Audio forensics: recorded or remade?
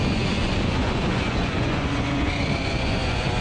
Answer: remade